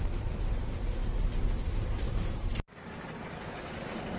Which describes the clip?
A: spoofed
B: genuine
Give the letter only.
B